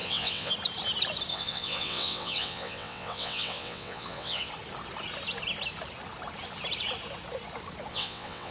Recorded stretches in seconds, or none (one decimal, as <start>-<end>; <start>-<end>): 0.5-1.3; 4.5-7.9